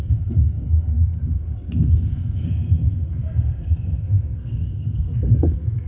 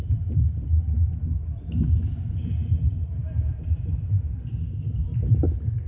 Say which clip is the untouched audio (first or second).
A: second